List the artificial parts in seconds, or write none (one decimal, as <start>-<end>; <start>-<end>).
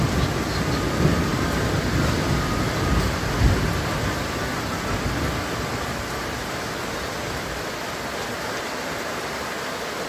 none